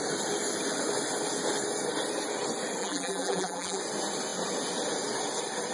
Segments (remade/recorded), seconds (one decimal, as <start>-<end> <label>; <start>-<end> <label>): 0.0-2.8 recorded; 2.8-3.8 remade; 3.8-5.7 recorded